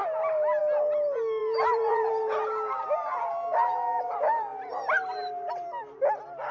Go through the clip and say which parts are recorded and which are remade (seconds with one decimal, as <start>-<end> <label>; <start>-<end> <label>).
0.0-1.4 recorded; 1.4-2.1 remade; 2.1-4.5 recorded; 4.5-5.5 remade; 5.5-6.5 recorded